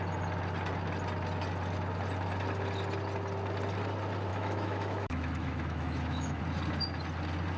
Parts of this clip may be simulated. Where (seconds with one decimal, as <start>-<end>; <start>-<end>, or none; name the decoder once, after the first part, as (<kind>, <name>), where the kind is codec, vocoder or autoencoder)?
4.3-6.4 (autoencoder, DAC-VAE)